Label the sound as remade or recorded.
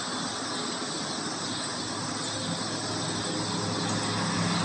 recorded